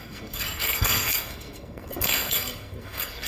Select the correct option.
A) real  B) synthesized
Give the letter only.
B